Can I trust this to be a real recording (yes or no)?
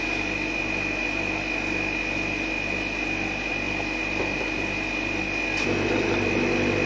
yes